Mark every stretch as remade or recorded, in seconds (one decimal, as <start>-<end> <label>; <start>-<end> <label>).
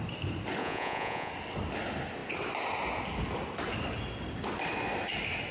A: 0.0-0.6 recorded; 0.6-1.3 remade; 1.3-5.5 recorded